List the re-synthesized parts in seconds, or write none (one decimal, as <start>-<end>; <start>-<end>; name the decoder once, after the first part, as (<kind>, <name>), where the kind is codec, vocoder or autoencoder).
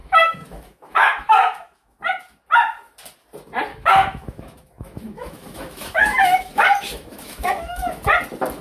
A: 0.0-2.0 (autoencoder, DAC-VAE); 3.7-8.0